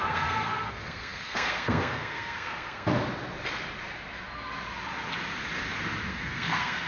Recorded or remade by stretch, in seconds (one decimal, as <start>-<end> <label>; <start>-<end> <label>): 0.0-2.9 remade; 2.9-6.1 recorded; 6.1-6.9 remade